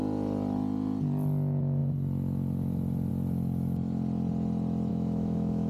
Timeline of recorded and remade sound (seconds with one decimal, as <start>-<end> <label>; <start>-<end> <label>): 0.0-4.9 recorded; 4.9-5.7 remade